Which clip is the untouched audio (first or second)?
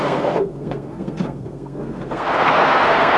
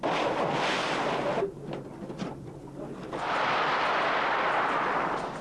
second